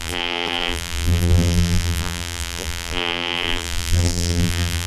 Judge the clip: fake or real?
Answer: fake